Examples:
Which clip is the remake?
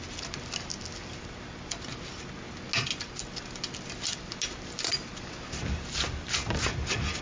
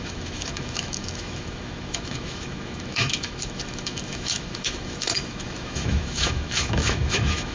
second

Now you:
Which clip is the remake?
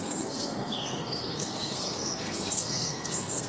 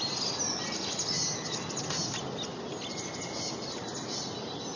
first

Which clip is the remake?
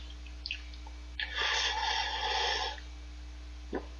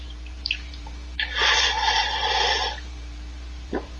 second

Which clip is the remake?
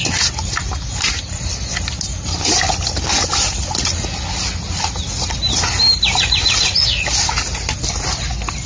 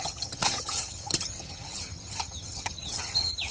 second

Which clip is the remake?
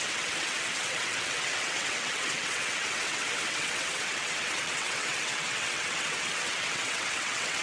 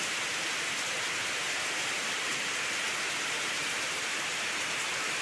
first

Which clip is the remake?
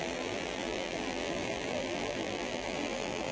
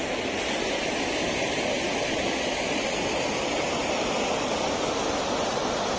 first